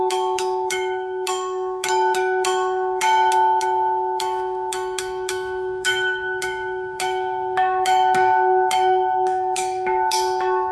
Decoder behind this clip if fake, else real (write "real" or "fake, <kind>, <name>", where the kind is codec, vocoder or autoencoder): fake, autoencoder, DAC-VAE